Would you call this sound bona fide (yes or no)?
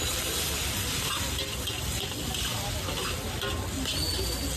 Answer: yes